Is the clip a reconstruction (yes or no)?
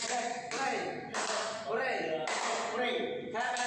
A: no